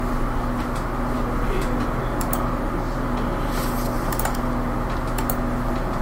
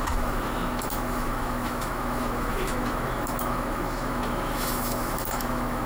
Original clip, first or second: first